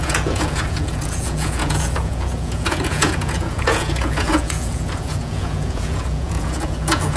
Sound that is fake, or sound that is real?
fake